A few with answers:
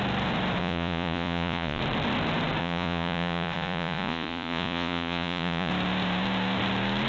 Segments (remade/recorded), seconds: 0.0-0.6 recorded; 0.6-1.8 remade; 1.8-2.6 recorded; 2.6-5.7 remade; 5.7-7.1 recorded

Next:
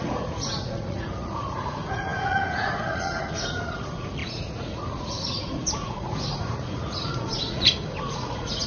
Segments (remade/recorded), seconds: 0.0-8.7 remade

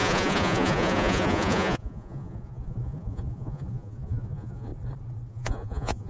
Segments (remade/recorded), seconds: 0.0-4.7 remade; 4.7-5.3 recorded; 5.3-6.1 remade